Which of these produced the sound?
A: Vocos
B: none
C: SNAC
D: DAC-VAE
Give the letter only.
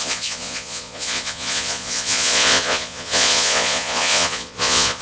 A